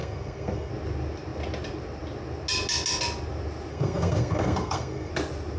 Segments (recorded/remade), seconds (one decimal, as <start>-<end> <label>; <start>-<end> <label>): 0.0-0.7 remade; 0.7-3.7 recorded; 3.7-5.1 remade; 5.1-5.6 recorded